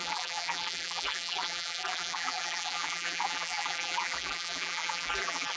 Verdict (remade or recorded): remade